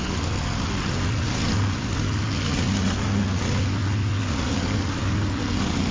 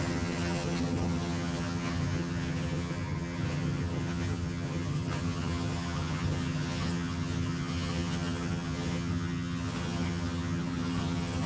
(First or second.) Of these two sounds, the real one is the first